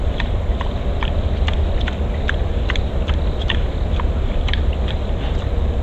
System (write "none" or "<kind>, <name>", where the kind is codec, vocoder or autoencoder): none